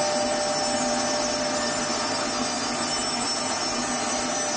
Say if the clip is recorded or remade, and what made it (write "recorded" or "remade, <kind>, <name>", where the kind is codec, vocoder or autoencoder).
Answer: recorded